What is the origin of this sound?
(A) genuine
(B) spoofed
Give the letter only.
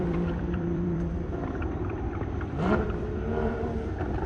B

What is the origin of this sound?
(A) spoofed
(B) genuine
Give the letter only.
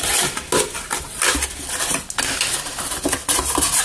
B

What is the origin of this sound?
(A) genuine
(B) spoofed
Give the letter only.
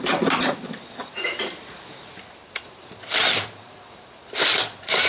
B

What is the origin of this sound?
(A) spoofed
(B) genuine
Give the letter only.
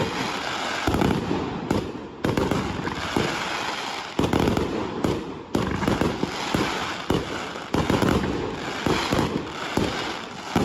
B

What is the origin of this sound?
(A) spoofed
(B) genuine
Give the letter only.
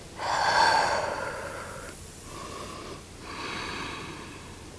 A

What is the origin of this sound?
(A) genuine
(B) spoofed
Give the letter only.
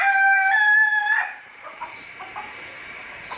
B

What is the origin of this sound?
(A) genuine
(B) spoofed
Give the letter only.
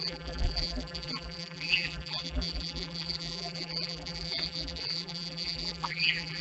B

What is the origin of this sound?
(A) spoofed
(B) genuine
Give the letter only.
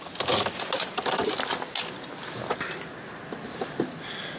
B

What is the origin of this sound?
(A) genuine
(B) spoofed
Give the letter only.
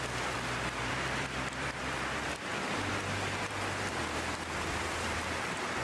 B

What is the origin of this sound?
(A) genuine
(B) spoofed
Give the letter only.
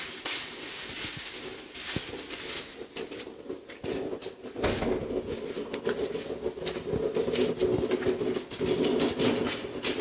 A